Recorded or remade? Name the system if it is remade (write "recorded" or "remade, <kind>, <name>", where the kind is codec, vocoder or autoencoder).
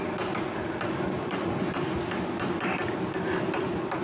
recorded